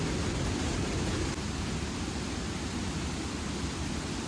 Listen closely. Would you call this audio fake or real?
real